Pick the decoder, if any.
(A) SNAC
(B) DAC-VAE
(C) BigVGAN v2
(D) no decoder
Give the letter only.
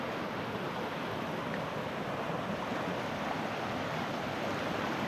D